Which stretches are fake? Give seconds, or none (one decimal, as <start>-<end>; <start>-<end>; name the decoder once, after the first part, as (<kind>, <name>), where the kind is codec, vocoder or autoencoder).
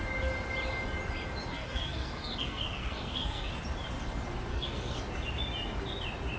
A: 1.5-3.5 (codec, SNAC); 4.5-5.0